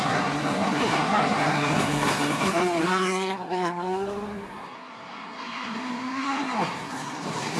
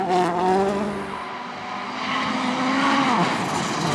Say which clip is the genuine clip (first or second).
second